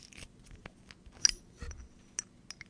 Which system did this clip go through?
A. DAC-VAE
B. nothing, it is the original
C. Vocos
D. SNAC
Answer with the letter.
B